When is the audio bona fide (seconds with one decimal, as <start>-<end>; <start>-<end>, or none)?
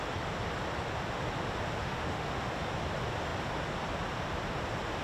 0.0-1.8; 2.5-5.0